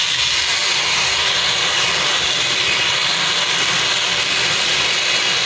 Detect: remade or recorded recorded